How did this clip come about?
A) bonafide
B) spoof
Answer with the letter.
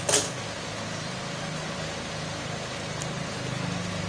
A